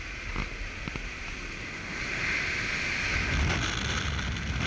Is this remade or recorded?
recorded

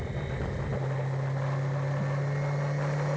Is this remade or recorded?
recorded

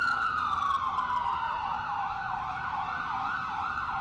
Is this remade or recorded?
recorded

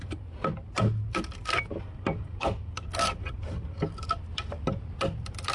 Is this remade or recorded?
recorded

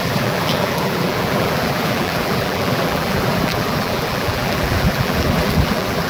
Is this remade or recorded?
remade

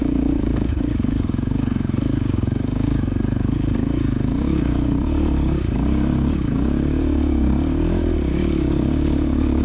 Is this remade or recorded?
remade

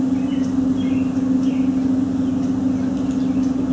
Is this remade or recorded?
recorded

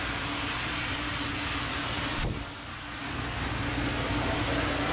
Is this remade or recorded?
recorded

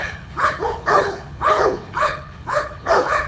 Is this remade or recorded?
remade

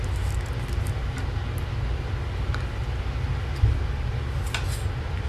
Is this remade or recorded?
recorded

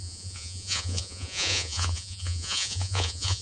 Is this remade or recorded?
remade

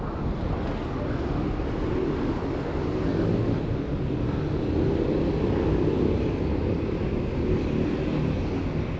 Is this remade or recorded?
recorded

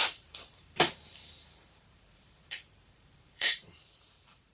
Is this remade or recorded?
remade